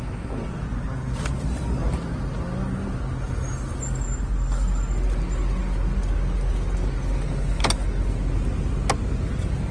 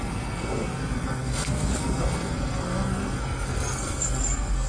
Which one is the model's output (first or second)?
second